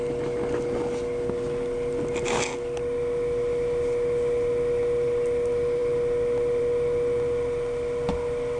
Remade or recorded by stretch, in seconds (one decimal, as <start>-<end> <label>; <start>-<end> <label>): 0.0-8.6 recorded